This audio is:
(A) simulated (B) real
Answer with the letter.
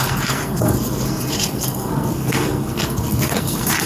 A